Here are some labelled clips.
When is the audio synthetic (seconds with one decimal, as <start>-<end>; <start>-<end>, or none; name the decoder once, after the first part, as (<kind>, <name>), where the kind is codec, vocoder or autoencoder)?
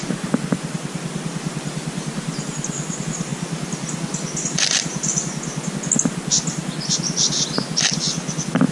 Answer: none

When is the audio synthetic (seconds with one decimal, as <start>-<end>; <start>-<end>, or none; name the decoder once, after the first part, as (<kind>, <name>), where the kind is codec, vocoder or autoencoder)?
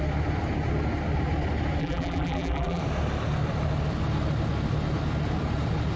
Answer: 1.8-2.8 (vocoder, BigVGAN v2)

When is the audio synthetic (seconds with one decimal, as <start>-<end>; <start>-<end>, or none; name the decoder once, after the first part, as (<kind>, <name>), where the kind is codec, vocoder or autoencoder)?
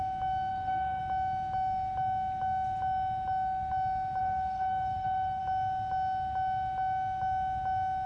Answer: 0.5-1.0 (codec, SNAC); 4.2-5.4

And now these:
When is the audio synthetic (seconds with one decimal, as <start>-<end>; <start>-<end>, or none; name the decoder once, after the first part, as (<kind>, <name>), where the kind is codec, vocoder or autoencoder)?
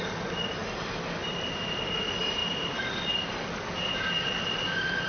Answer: none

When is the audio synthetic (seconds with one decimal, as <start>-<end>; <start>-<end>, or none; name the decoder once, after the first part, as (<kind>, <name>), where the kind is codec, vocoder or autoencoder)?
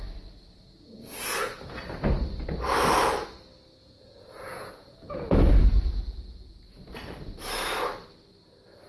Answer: 3.8-6.6 (vocoder, Vocos)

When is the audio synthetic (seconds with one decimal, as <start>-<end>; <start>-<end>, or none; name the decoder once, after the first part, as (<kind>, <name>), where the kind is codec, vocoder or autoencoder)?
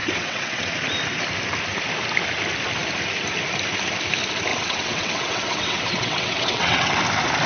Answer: 0.0-0.7 (vocoder, WaveNeXt); 4.5-7.0